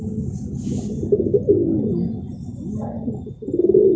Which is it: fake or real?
real